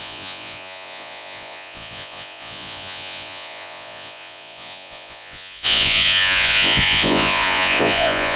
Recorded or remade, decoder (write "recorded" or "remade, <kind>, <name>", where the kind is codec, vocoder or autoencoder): remade, vocoder, Vocos